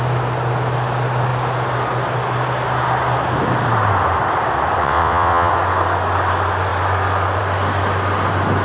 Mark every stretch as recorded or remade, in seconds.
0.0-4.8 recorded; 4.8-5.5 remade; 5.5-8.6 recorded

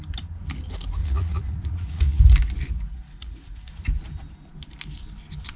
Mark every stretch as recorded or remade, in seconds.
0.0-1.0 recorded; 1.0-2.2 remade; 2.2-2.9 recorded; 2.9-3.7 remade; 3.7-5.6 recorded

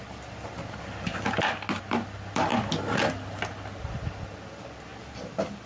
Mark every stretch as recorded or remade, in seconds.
0.0-1.1 remade; 1.1-1.8 recorded; 1.8-2.5 remade; 2.5-3.8 recorded; 3.8-5.7 remade